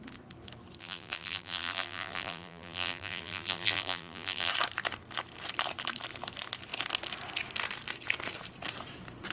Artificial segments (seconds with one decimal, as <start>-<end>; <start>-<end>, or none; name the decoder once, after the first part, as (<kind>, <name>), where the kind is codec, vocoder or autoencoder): 0.8-4.5 (vocoder, BigVGAN v2)